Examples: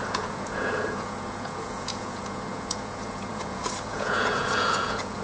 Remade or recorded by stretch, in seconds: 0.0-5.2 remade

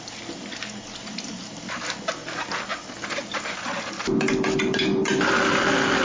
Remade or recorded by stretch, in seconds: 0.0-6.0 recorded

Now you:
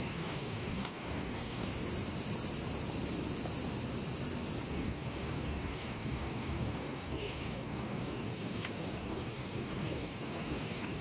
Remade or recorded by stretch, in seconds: 0.0-1.7 remade; 1.7-4.7 recorded; 4.7-11.0 remade

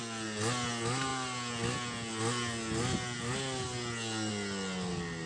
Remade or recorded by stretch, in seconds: 0.0-5.3 recorded